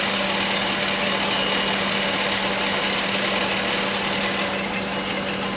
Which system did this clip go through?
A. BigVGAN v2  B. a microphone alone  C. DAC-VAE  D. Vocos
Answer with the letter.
B